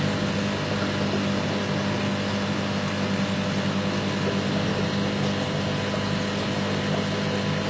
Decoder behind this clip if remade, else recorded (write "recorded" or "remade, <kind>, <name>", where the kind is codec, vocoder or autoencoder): recorded